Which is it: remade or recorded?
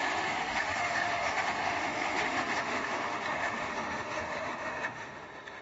remade